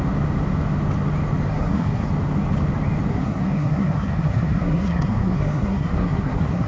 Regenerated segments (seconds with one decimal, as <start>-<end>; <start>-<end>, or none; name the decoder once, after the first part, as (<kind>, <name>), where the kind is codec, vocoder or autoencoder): 1.5-2.1 (codec, SNAC); 3.1-6.7